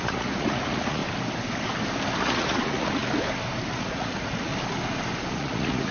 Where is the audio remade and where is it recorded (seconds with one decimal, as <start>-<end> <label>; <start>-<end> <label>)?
0.0-1.0 remade; 1.0-2.2 recorded; 2.2-3.0 remade; 3.0-3.7 recorded; 3.7-4.5 remade; 4.5-5.3 recorded; 5.3-5.9 remade